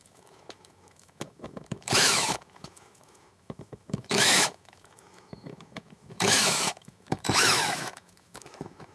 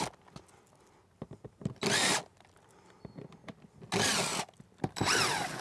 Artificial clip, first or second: first